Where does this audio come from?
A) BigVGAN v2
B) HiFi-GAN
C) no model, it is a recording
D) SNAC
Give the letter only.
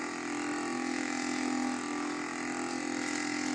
C